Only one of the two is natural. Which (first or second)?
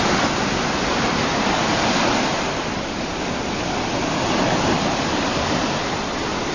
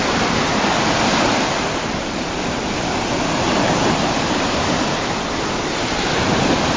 first